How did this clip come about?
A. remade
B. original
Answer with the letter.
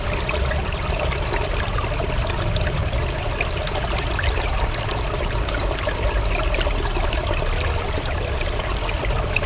B